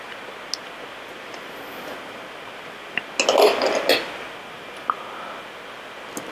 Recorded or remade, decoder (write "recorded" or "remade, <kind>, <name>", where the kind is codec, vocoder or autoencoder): recorded